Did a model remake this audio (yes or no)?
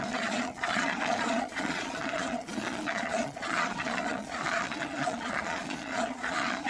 yes